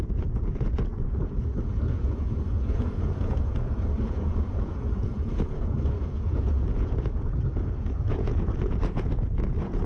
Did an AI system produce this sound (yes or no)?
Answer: yes